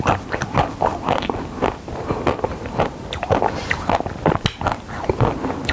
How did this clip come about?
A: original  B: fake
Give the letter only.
A